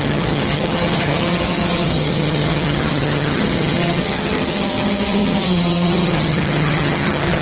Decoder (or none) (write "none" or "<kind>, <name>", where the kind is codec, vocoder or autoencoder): vocoder, HiFi-GAN